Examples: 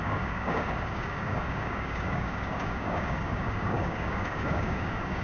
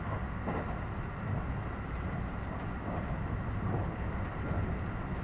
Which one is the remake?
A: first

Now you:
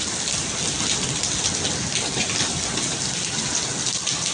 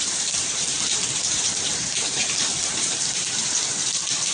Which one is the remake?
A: second